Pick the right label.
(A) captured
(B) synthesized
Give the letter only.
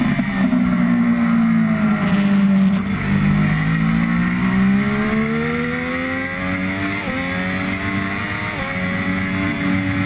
A